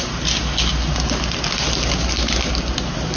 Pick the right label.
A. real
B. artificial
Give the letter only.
A